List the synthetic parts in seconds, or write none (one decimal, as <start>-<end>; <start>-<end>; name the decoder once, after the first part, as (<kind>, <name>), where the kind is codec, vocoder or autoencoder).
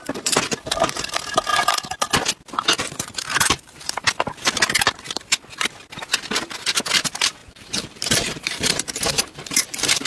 3.2-4.0 (vocoder, BigVGAN v2); 7.4-10.1